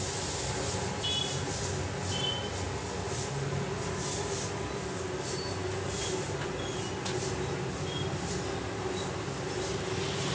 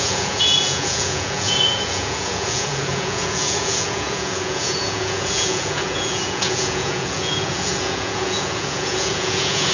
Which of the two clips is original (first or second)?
first